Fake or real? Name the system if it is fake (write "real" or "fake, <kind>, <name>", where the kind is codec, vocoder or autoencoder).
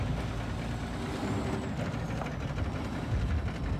real